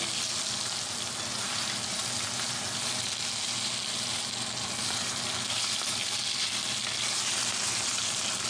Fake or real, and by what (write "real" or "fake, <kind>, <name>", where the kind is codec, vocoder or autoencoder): real